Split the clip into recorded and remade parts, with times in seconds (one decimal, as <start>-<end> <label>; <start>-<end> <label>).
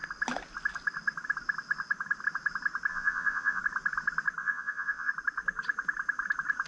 0.0-2.9 recorded; 2.9-3.6 remade; 3.6-4.4 recorded; 4.4-5.1 remade; 5.1-6.7 recorded